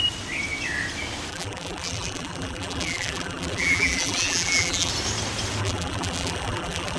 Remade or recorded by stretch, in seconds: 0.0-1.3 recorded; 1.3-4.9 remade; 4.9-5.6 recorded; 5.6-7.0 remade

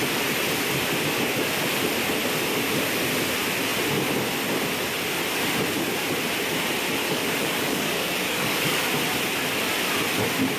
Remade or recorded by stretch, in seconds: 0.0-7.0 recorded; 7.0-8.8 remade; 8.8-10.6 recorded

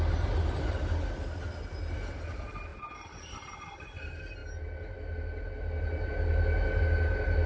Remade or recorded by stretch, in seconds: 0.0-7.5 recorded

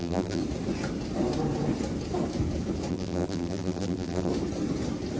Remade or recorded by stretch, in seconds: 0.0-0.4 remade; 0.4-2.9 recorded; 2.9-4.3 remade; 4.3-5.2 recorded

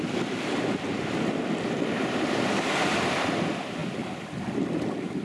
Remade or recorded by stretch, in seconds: 0.0-0.9 recorded; 0.9-2.0 remade; 2.0-5.2 recorded

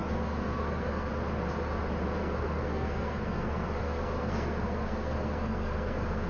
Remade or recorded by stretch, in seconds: 0.0-1.1 remade; 1.1-2.2 recorded; 2.2-6.3 remade